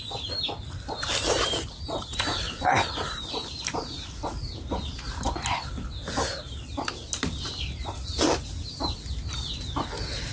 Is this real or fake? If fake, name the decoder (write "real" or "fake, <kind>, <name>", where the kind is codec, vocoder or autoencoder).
real